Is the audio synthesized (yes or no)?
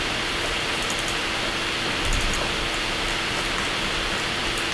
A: yes